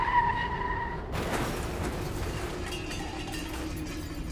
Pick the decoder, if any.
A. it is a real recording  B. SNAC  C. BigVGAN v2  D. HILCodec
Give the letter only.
A